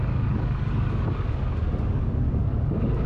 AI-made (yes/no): yes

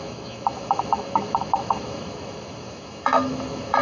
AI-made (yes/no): yes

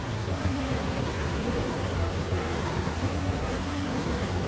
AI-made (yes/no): yes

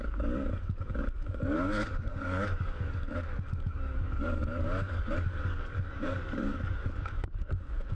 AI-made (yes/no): yes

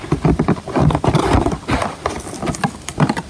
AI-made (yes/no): yes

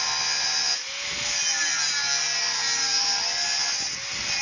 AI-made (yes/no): no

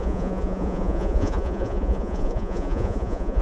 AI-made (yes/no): yes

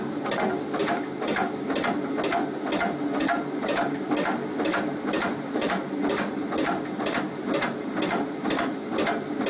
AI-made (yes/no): no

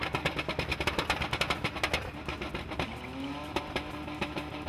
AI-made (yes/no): no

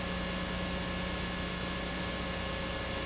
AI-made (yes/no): no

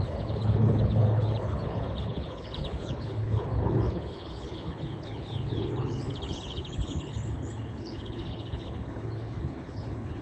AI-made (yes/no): yes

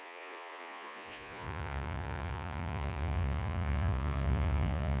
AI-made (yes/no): yes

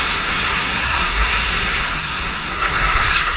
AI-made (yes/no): yes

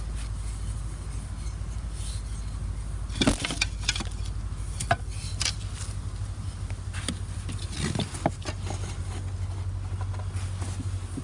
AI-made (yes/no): no